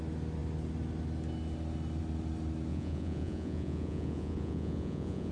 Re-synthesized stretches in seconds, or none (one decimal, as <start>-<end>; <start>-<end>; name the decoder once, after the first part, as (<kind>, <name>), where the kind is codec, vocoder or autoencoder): 2.7-5.3 (vocoder, Vocos)